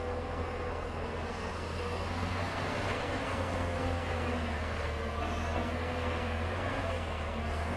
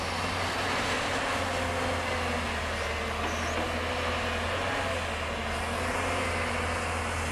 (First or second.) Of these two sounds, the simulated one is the first